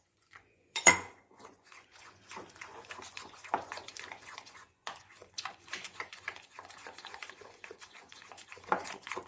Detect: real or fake fake